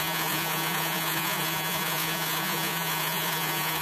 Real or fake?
fake